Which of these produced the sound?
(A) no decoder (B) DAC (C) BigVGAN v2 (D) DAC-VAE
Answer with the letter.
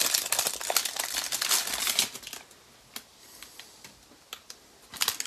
A